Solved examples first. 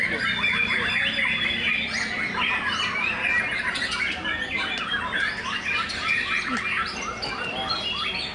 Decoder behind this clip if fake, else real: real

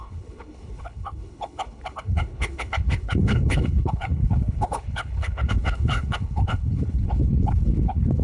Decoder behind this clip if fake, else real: fake, codec, HILCodec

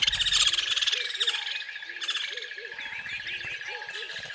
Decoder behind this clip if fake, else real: real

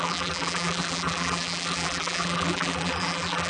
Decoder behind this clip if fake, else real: fake, vocoder, BigVGAN v2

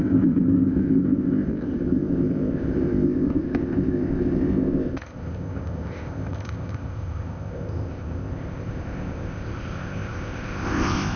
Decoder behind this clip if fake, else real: fake, codec, ZipCodec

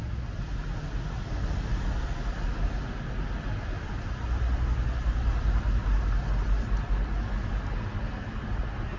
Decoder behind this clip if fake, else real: real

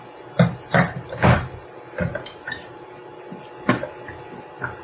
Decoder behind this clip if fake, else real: real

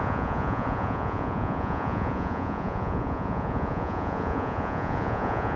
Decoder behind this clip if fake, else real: fake, vocoder, Vocos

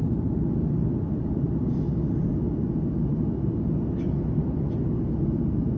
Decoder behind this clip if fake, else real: real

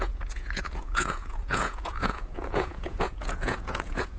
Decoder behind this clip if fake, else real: fake, vocoder, Vocos